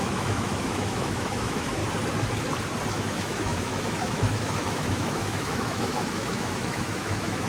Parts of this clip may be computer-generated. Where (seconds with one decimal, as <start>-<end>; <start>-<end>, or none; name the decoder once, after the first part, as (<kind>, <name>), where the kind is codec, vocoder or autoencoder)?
0.0-1.8 (autoencoder, DAC-VAE); 2.9-7.5